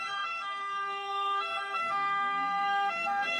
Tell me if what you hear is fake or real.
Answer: fake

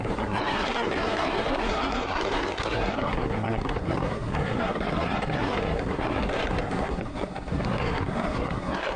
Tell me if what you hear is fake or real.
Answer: fake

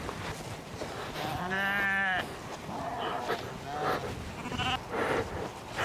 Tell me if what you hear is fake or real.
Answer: real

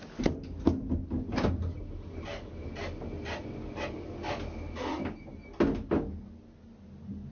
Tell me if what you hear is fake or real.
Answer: real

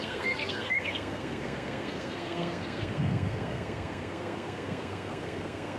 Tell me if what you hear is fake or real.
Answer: fake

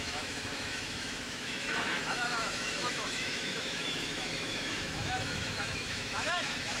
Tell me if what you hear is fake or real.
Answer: fake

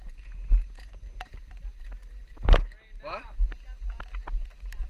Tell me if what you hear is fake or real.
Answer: real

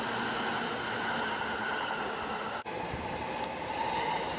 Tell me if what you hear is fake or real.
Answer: real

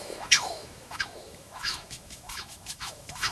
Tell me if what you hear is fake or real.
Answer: fake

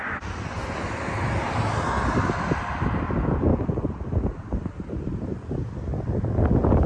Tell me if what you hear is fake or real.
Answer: real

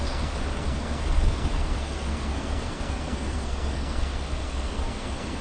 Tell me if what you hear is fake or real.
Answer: fake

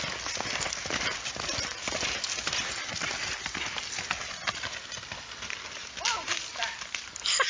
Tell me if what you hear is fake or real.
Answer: real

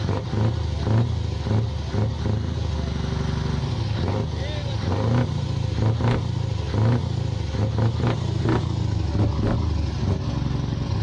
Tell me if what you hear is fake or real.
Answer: real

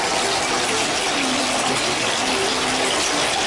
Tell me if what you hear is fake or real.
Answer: real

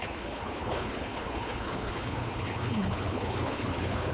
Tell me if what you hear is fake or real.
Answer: fake